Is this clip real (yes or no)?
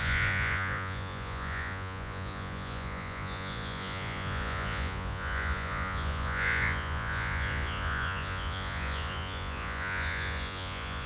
no